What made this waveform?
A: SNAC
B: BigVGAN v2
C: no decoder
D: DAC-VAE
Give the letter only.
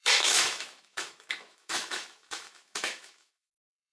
D